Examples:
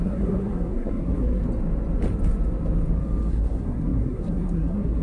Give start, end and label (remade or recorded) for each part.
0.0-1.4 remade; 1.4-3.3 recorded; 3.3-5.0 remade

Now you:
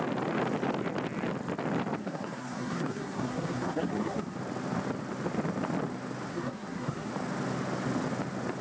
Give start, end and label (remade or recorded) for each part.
0.0-2.0 recorded; 2.0-4.4 remade; 4.4-6.3 recorded; 6.3-7.1 remade; 7.1-8.6 recorded

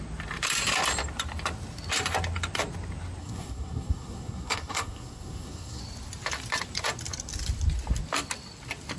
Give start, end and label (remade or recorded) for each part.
0.0-3.2 recorded; 3.2-5.8 remade; 5.8-9.0 recorded

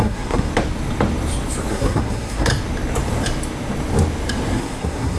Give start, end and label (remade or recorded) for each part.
0.0-0.5 remade; 0.5-1.7 recorded; 1.7-2.5 remade; 2.5-4.5 recorded; 4.5-5.2 remade

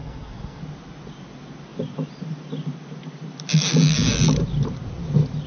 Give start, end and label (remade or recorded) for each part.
0.0-0.6 remade; 0.6-5.5 recorded

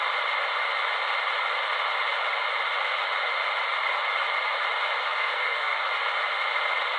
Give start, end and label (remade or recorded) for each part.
0.0-5.0 recorded; 5.0-5.8 remade; 5.8-7.0 recorded

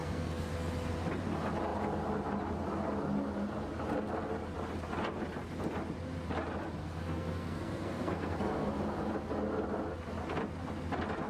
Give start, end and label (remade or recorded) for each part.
0.0-0.7 remade; 0.7-6.8 recorded; 6.8-8.7 remade; 8.7-11.3 recorded